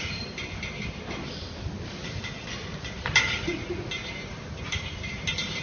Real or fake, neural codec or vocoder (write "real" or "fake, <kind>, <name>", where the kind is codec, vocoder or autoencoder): real